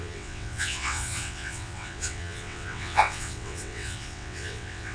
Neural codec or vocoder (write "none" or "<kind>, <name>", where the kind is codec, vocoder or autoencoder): vocoder, WaveNeXt